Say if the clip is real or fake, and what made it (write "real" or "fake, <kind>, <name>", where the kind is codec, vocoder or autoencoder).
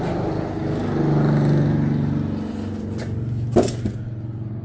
real